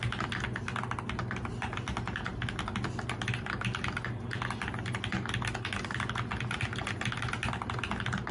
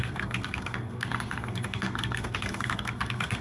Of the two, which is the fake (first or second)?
second